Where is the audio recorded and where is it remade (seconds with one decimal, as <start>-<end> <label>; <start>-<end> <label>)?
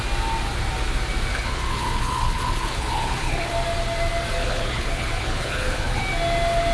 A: 0.0-1.3 recorded; 1.3-3.5 remade; 3.5-4.4 recorded; 4.4-6.0 remade; 6.0-6.7 recorded